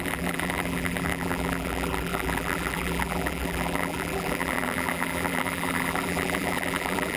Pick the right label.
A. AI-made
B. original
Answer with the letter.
A